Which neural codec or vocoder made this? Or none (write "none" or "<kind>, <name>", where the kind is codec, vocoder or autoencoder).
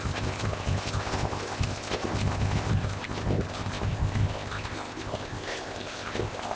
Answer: codec, ZipCodec